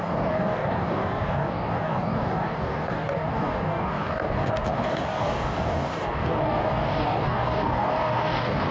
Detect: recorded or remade remade